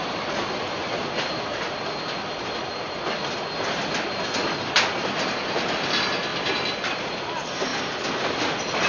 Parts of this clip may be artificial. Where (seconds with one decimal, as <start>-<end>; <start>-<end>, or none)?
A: 6.3-7.1